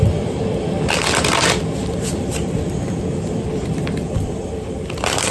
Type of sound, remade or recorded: remade